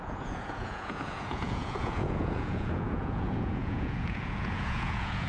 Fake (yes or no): yes